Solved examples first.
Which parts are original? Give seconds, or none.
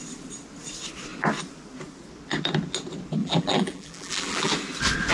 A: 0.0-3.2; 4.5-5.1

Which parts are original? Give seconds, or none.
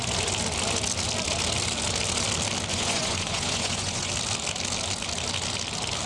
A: 0.0-2.7; 4.1-6.1